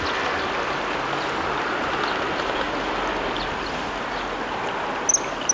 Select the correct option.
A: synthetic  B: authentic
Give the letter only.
B